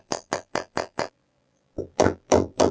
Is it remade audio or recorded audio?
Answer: remade